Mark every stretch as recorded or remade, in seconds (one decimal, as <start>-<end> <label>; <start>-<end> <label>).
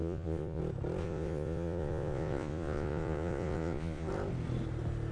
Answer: 0.0-0.6 remade; 0.6-1.0 recorded; 1.0-4.1 remade; 4.1-5.1 recorded